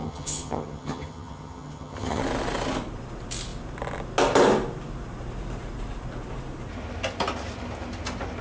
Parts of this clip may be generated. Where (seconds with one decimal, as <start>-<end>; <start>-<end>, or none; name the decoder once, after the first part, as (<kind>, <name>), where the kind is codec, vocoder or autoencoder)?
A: 0.0-2.2 (vocoder, HiFi-GAN)